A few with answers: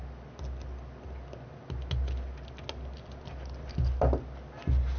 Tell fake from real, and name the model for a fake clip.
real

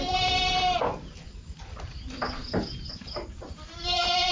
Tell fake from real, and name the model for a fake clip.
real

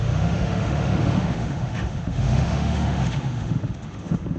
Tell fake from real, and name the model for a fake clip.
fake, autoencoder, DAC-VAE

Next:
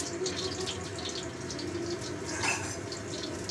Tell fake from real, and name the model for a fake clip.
real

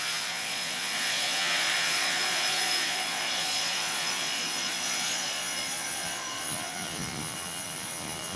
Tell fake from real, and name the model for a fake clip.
fake, vocoder, Vocos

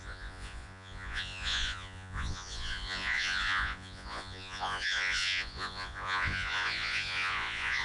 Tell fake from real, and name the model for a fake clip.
fake, vocoder, Vocos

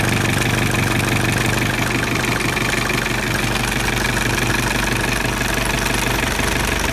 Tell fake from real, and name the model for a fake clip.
real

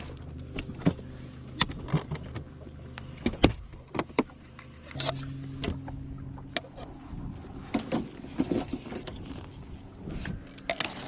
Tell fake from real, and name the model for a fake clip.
real